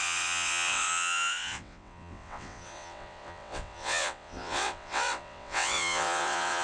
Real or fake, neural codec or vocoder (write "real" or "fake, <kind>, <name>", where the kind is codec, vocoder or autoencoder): fake, vocoder, WaveNeXt